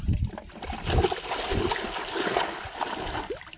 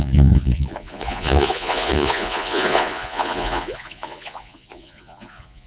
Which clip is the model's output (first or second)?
second